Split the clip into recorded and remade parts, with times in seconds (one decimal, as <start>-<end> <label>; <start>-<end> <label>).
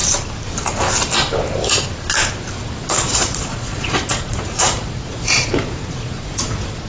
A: 0.0-2.8 recorded; 2.8-6.9 remade